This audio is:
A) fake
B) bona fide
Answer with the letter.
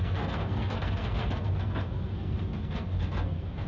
A